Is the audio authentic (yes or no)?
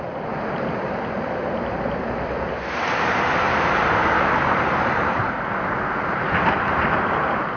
no